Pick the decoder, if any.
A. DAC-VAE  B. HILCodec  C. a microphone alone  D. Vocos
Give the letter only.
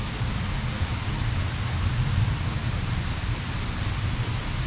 C